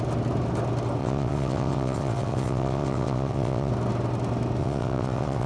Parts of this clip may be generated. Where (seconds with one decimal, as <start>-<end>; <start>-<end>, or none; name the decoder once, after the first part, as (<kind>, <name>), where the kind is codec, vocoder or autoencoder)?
1.0-3.7 (vocoder, WaveNeXt); 4.6-5.5